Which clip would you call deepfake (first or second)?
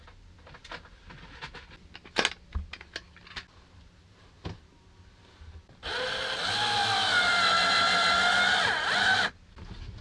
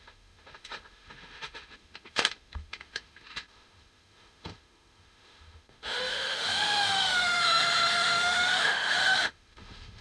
second